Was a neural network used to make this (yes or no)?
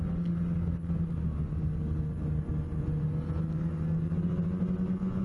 no